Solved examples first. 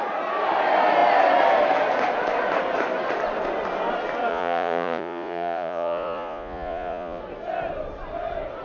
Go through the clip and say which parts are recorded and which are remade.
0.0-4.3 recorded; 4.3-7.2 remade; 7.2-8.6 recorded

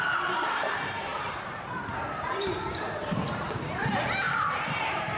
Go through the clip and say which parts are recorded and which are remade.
0.0-5.2 remade

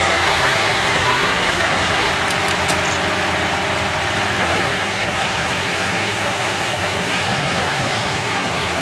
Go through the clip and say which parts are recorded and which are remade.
0.0-2.1 remade; 2.1-4.4 recorded; 4.4-8.8 remade